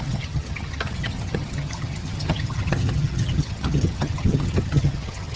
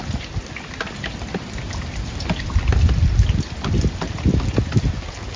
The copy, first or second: first